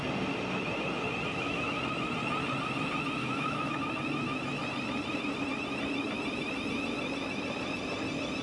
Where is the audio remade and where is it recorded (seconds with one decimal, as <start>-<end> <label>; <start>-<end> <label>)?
0.0-1.3 recorded; 1.3-1.8 remade; 1.8-3.2 recorded; 3.2-3.8 remade; 3.8-8.4 recorded